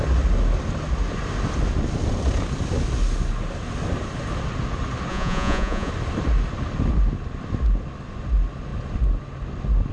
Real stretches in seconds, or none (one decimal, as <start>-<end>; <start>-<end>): 0.0-5.1; 5.9-9.9